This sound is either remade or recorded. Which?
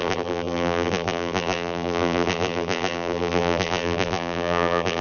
remade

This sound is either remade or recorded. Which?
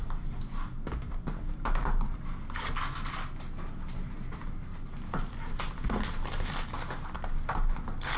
recorded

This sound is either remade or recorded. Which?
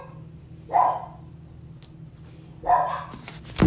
recorded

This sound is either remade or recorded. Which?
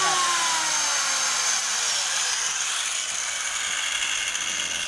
recorded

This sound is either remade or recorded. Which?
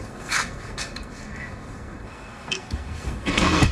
remade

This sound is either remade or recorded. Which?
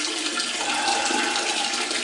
recorded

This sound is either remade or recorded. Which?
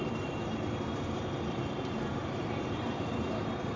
remade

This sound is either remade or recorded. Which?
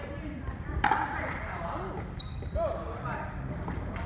recorded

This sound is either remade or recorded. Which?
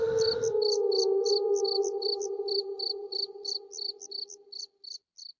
recorded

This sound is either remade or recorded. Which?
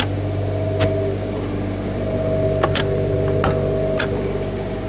recorded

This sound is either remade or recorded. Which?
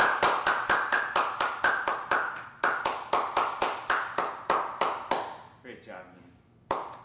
recorded